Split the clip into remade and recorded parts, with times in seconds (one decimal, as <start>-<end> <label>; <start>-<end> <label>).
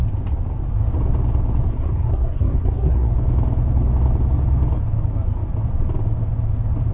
0.0-1.7 recorded; 1.7-3.1 remade; 3.1-6.9 recorded